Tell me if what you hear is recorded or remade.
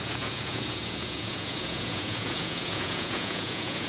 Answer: remade